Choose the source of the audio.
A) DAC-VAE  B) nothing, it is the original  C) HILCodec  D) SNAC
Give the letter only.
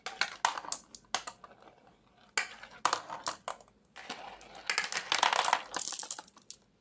B